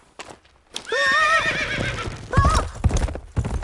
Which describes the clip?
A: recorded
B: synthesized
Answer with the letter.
A